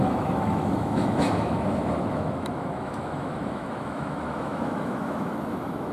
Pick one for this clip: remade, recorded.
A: remade